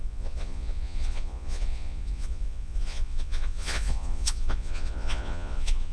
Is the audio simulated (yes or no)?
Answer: yes